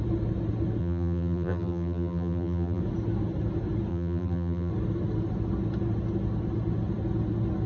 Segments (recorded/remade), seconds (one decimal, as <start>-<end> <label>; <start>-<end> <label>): 0.0-0.8 recorded; 0.8-2.8 remade; 2.8-3.9 recorded; 3.9-4.7 remade; 4.7-7.7 recorded